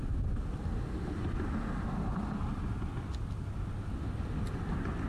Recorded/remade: recorded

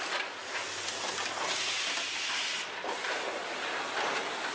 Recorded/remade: recorded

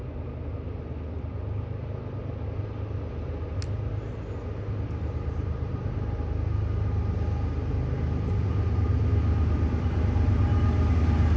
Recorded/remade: recorded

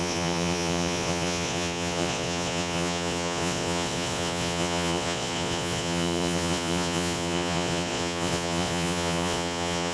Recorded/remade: remade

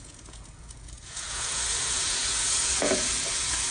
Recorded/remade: remade